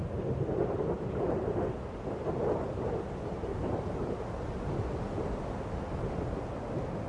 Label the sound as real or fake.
real